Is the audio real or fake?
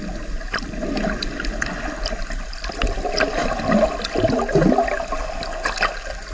real